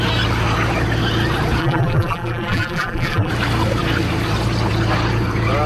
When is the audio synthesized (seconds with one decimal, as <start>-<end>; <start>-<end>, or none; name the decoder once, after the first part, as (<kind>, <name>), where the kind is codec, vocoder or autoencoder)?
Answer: 1.6-3.3 (vocoder, BigVGAN v2)